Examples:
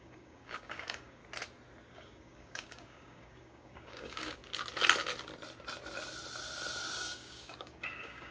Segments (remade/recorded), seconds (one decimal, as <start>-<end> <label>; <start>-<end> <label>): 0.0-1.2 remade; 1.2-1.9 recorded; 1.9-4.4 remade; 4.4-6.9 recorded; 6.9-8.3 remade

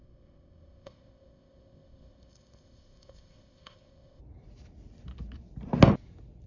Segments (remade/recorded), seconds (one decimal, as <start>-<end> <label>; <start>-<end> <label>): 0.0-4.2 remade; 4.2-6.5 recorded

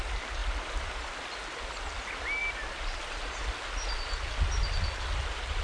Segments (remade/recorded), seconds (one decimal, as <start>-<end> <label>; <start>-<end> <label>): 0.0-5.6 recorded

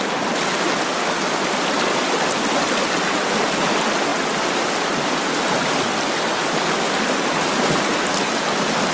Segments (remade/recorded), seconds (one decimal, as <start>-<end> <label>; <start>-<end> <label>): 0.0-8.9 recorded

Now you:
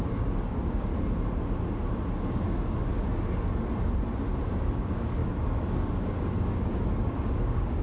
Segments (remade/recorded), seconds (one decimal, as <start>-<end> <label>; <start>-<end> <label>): 0.0-0.9 remade; 0.9-2.1 recorded; 2.1-2.9 remade; 2.9-4.4 recorded; 4.4-7.8 remade

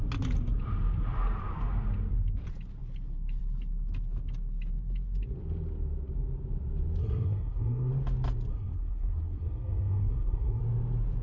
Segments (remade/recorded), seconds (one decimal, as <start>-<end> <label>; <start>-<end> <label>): 0.0-7.0 recorded; 7.0-7.9 remade; 7.9-8.5 recorded; 8.5-10.6 remade; 10.6-11.2 recorded

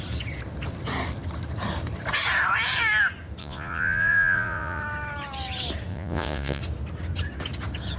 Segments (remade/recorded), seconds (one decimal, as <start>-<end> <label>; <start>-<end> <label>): 0.0-3.4 recorded; 3.4-4.8 remade; 4.8-5.9 recorded; 5.9-6.6 remade; 6.6-8.0 recorded

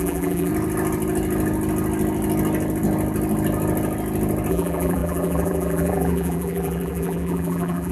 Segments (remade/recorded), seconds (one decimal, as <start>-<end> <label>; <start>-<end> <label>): 0.0-0.5 remade; 0.5-4.5 recorded; 4.5-7.9 remade